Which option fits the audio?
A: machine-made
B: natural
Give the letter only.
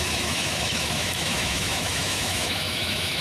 A